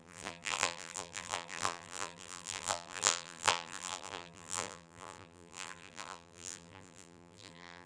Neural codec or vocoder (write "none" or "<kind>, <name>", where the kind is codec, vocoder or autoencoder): vocoder, BigVGAN v2